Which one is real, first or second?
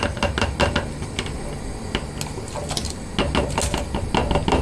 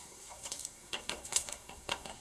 first